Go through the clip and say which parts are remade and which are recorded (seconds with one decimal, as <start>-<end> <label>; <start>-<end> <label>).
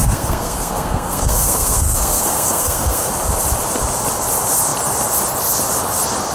0.0-3.1 remade; 3.1-6.3 recorded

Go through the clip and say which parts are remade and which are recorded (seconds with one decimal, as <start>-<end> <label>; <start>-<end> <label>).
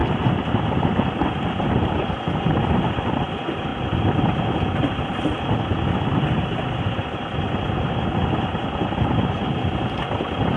0.0-10.6 recorded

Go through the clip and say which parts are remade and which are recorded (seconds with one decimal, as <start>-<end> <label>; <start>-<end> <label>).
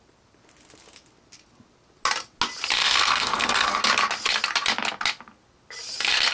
0.0-2.8 recorded; 2.8-3.8 remade; 3.8-6.3 recorded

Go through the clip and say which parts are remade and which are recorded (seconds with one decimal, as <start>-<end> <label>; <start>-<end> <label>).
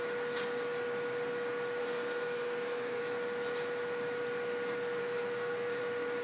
0.0-1.8 recorded; 1.8-3.0 remade; 3.0-5.0 recorded; 5.0-5.8 remade; 5.8-6.2 recorded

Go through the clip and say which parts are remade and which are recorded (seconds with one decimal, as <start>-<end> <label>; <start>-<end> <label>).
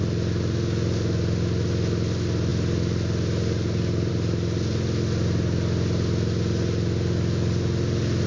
0.0-8.3 recorded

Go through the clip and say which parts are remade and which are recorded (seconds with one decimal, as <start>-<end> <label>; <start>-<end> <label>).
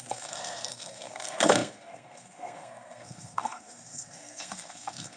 0.0-5.2 remade